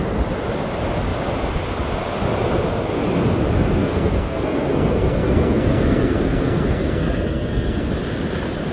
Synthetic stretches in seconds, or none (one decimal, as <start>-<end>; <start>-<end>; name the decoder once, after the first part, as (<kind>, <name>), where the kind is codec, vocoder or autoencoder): 3.8-7.9 (codec, SNAC)